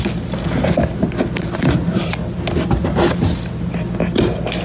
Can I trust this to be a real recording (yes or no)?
yes